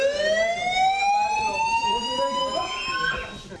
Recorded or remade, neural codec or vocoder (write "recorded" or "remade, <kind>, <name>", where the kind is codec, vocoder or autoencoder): recorded